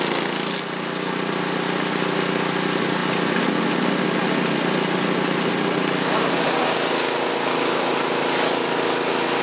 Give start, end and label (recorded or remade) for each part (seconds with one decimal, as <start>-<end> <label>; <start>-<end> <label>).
0.0-6.6 recorded; 6.6-7.8 remade; 7.8-9.4 recorded